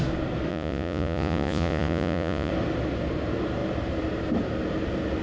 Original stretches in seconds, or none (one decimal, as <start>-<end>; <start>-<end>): 0.0-0.5; 2.5-5.2